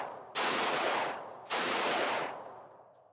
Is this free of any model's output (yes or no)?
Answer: no